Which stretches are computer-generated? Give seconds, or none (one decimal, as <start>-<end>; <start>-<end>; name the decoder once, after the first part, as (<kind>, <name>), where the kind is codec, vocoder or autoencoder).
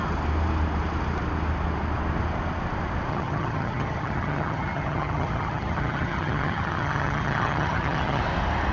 3.1-8.2 (vocoder, HiFi-GAN)